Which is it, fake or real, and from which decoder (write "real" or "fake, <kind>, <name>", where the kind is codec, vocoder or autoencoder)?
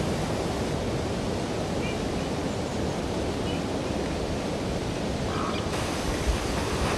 fake, vocoder, BigVGAN v2